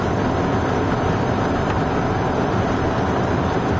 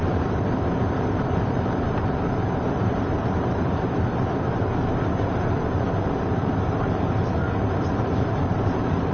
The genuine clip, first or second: first